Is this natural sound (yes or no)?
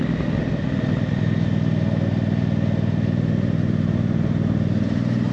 yes